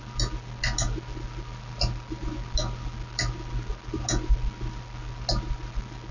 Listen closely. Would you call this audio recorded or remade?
recorded